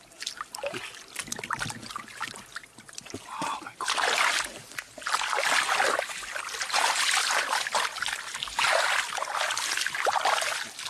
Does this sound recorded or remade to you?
recorded